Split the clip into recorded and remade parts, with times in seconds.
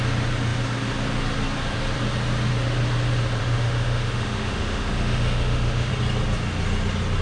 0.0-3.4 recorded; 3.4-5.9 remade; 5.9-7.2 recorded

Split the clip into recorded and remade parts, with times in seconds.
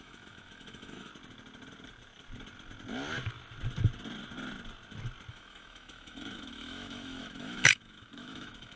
0.0-1.1 remade; 1.1-5.3 recorded; 5.3-8.8 remade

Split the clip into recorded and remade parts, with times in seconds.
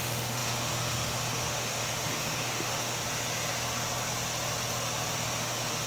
0.0-3.0 remade; 3.0-5.4 recorded; 5.4-5.9 remade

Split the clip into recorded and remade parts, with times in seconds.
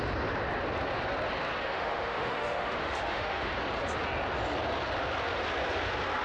0.0-1.6 recorded; 1.6-3.5 remade; 3.5-6.2 recorded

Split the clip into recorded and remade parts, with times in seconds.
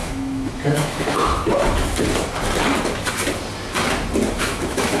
0.0-1.4 remade; 1.4-4.4 recorded; 4.4-5.0 remade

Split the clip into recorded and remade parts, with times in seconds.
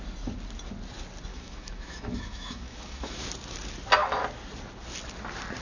0.0-1.3 recorded; 1.3-3.2 remade; 3.2-5.6 recorded